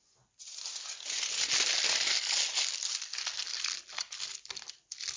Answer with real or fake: real